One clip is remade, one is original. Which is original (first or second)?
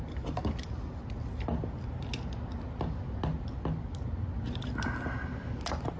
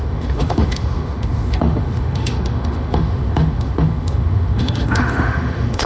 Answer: first